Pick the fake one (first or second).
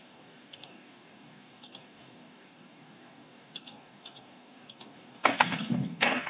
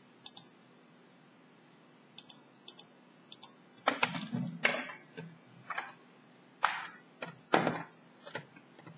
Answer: first